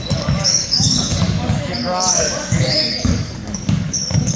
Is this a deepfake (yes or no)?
yes